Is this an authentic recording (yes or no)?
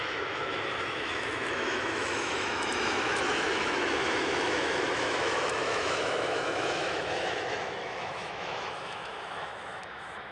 no